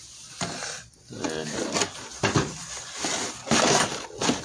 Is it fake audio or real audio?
real